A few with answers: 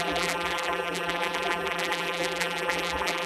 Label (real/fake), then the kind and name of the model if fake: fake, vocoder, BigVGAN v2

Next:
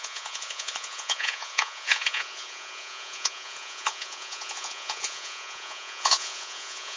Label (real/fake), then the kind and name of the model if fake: fake, vocoder, Vocos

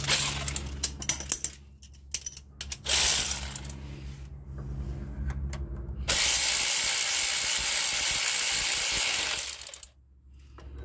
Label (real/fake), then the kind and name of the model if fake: real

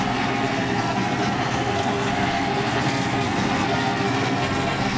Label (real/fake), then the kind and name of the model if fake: fake, codec, SNAC